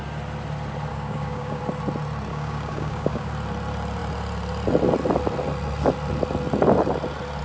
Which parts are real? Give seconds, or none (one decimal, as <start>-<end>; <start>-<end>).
0.0-0.9; 1.6-2.3; 3.3-7.4